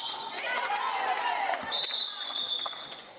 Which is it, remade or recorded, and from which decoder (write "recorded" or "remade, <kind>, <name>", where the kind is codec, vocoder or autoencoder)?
remade, vocoder, Vocos